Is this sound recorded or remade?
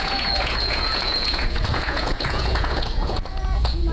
remade